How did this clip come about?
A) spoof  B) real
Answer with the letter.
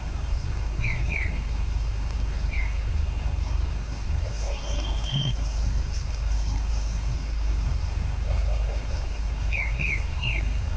A